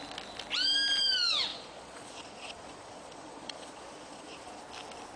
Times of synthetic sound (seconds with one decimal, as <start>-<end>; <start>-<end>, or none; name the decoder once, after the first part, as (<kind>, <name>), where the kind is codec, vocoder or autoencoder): 1.5-4.6 (vocoder, Vocos)